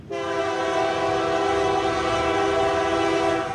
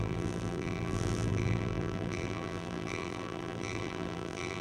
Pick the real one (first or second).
first